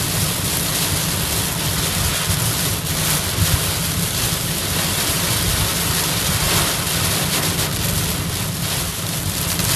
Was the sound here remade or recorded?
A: recorded